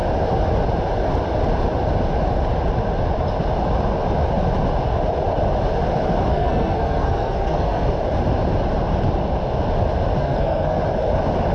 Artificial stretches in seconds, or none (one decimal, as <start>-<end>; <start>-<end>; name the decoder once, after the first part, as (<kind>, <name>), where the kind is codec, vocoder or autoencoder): 6.3-7.9 (codec, SNAC); 10.2-10.8